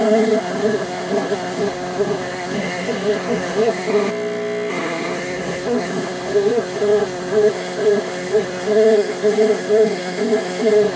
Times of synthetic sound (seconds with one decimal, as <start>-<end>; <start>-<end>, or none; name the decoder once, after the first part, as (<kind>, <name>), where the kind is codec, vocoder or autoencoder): 0.0-4.1 (codec, SNAC); 4.7-11.0